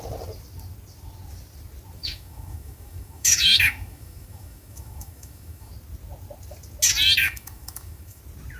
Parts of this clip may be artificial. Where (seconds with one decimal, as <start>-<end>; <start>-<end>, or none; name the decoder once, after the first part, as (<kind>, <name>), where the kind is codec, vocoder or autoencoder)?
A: 2.0-5.7 (autoencoder, DAC-VAE); 7.2-8.2